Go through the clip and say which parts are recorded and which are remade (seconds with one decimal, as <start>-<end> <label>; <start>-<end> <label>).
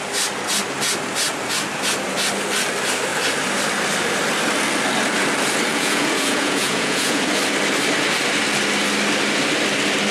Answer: 0.0-5.7 recorded; 5.7-7.2 remade; 7.2-10.1 recorded